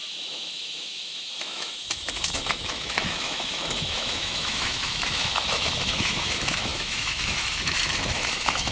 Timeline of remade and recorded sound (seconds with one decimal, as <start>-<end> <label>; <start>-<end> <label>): 0.0-8.7 remade